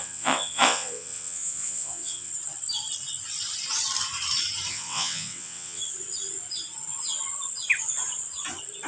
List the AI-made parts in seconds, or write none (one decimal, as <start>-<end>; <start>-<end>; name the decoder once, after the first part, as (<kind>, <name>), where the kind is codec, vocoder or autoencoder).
0.0-2.3 (vocoder, WaveNeXt); 4.7-5.8